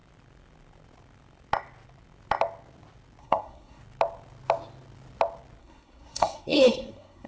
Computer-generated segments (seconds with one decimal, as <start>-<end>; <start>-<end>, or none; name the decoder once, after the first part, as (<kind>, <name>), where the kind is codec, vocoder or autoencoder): 3.2-3.8 (codec, SNAC); 5.6-7.3